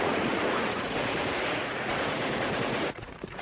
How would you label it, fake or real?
fake